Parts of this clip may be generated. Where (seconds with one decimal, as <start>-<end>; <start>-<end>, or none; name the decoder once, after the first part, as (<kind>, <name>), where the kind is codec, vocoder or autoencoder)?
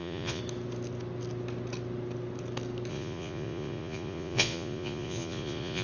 0.0-0.4 (vocoder, Vocos); 2.9-5.8